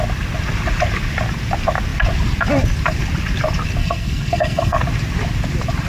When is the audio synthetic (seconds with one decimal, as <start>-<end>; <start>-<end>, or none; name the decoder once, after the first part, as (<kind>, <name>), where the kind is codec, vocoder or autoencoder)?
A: 3.8-4.8 (codec, SNAC)